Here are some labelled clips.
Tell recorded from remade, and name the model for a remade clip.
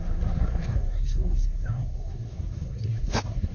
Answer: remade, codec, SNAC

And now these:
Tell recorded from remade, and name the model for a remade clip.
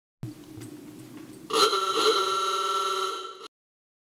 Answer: recorded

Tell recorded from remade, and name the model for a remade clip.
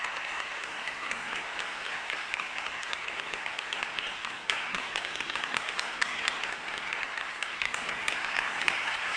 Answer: remade, codec, SNAC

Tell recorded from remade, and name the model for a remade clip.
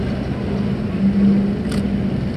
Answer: recorded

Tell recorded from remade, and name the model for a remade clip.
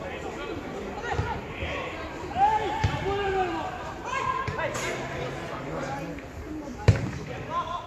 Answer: recorded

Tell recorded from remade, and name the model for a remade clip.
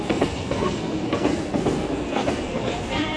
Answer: remade, codec, SNAC